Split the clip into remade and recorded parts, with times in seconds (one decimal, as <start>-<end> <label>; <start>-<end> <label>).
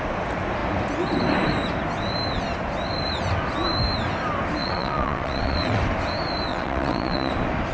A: 0.0-4.6 recorded; 4.6-5.8 remade; 5.8-6.5 recorded; 6.5-7.3 remade; 7.3-7.7 recorded